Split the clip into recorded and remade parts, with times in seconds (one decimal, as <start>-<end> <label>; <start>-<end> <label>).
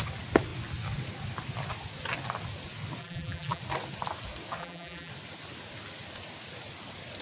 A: 0.0-3.0 recorded; 3.0-3.6 remade; 3.6-4.6 recorded; 4.6-5.1 remade; 5.1-7.2 recorded